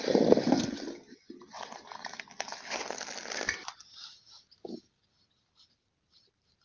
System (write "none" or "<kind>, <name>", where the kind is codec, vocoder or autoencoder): none